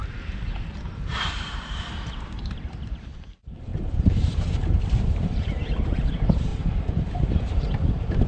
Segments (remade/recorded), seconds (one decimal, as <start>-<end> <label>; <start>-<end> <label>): 0.0-5.6 remade; 5.6-6.1 recorded; 6.1-6.5 remade; 6.5-7.3 recorded; 7.3-8.3 remade

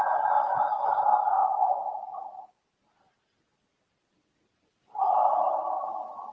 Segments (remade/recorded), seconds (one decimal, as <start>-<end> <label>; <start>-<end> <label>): 0.0-6.3 recorded

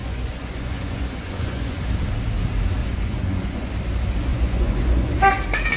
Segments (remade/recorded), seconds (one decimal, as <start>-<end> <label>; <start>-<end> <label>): 0.0-1.8 remade; 1.8-2.8 recorded; 2.8-3.7 remade; 3.7-4.3 recorded; 4.3-5.2 remade; 5.2-5.8 recorded

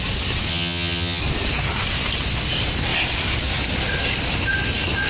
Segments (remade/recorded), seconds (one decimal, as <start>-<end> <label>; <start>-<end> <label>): 0.0-0.5 recorded; 0.5-1.2 remade; 1.2-5.1 recorded

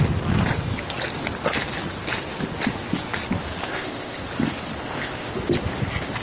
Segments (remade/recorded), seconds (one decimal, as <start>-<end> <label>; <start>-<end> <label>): 0.0-3.6 recorded; 3.6-4.2 remade; 4.2-4.8 recorded; 4.8-5.3 remade; 5.3-6.2 recorded

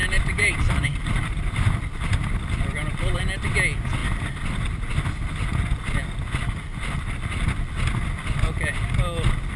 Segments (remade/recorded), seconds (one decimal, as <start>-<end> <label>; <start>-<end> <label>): 0.0-3.2 remade; 3.2-6.7 recorded; 6.7-7.6 remade; 7.6-9.6 recorded